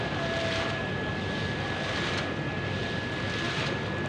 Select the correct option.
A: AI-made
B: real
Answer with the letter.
B